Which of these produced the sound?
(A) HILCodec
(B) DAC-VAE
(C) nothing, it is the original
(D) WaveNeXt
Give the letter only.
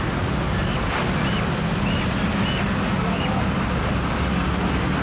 C